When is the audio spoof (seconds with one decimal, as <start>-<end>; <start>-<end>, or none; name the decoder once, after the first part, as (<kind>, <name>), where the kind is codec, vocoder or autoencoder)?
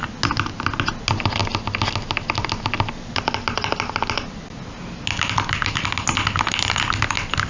none